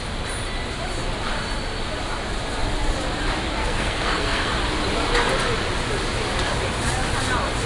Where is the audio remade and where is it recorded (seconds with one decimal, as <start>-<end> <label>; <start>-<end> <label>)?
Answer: 0.0-3.6 recorded; 3.6-4.5 remade; 4.5-7.7 recorded